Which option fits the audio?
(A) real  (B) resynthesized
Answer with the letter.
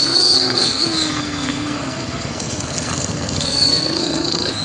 B